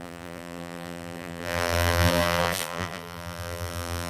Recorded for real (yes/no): no